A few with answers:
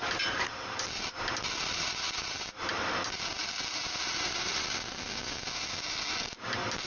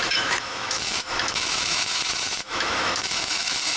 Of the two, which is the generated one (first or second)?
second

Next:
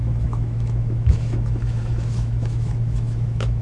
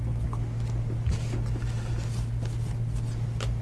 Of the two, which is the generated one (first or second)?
first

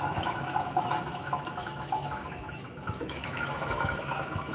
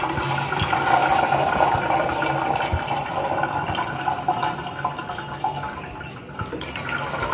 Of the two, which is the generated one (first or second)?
first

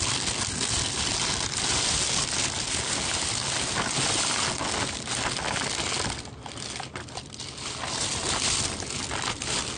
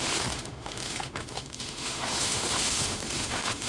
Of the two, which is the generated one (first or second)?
second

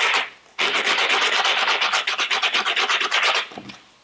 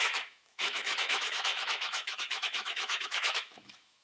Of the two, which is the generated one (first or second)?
second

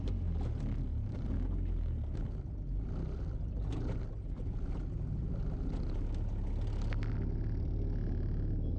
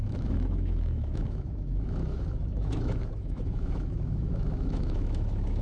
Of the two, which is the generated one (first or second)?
second